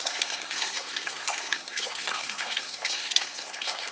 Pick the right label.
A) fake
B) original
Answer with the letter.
A